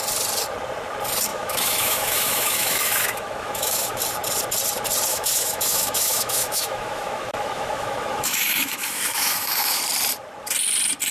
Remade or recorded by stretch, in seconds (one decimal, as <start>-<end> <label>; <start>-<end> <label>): 0.0-1.3 recorded; 1.3-4.0 remade; 4.0-5.1 recorded; 5.1-9.8 remade; 9.8-11.1 recorded